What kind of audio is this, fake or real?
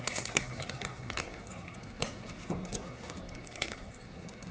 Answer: fake